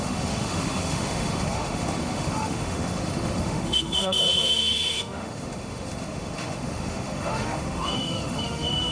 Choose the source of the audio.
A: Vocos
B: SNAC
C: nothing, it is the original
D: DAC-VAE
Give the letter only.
D